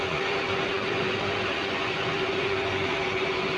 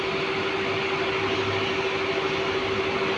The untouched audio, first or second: second